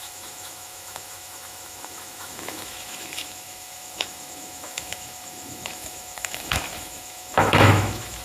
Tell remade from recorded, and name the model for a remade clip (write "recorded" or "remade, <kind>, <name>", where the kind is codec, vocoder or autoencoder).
remade, autoencoder, DAC-VAE